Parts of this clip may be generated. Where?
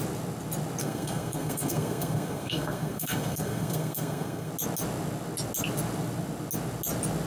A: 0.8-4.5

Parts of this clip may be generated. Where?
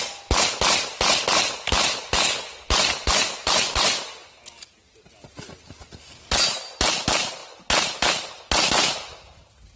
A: none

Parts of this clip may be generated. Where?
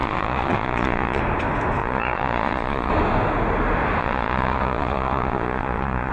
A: 0.0-1.2; 1.8-2.9; 4.0-6.1